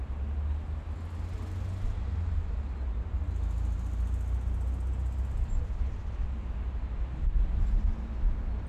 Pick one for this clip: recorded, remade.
recorded